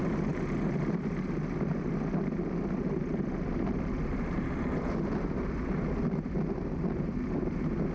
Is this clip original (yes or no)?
yes